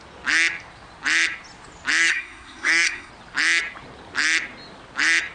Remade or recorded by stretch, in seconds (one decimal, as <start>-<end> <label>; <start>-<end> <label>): 0.0-2.0 recorded; 2.0-3.1 remade; 3.1-5.3 recorded